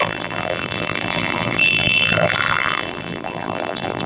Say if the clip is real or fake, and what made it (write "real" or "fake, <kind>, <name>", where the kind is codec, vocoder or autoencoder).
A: fake, vocoder, BigVGAN v2